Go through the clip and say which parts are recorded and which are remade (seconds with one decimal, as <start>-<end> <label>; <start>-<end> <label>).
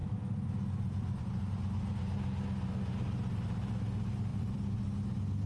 0.0-1.3 remade; 1.3-4.3 recorded; 4.3-4.8 remade; 4.8-5.5 recorded